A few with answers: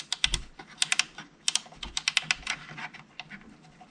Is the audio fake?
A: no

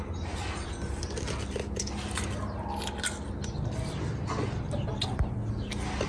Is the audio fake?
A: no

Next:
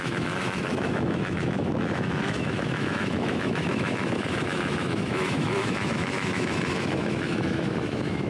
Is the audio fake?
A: yes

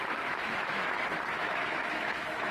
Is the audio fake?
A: yes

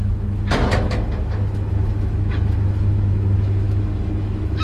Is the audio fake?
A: yes